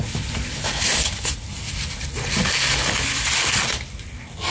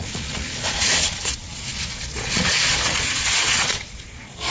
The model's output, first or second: second